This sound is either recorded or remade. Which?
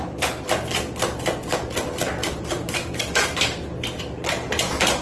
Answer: recorded